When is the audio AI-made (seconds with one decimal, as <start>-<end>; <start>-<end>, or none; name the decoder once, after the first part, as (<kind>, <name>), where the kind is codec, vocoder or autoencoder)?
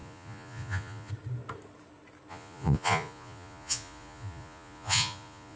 0.0-1.1 (vocoder, Vocos); 2.3-5.6